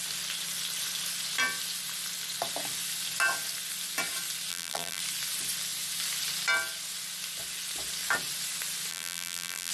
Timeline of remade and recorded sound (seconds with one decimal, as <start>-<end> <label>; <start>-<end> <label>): 0.0-4.5 recorded; 4.5-5.0 remade; 5.0-8.9 recorded; 8.9-9.7 remade